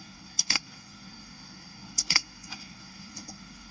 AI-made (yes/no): yes